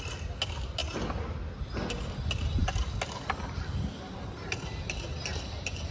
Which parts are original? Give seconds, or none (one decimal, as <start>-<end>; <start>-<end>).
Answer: 0.0-5.9